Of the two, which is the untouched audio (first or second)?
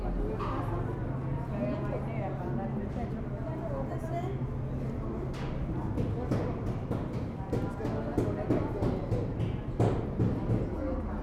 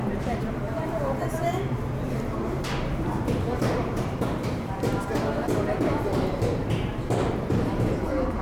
first